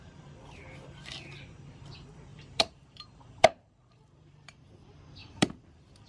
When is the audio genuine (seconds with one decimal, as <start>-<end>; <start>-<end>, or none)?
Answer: 0.0-2.3; 4.7-5.2